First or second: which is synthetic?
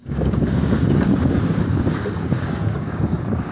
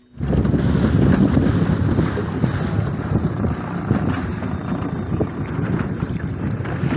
first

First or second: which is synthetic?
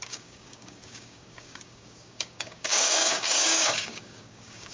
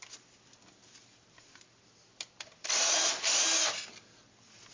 first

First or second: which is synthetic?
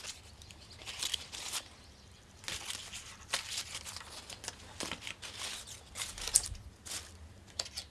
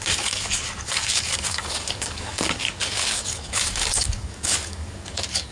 second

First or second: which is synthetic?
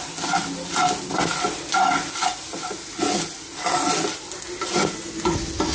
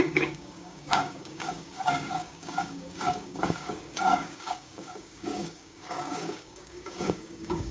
second